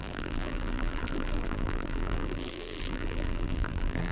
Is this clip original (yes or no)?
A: no